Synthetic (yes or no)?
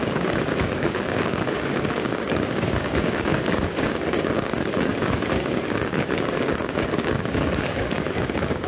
yes